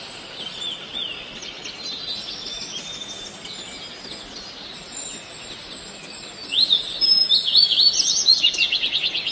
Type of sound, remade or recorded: recorded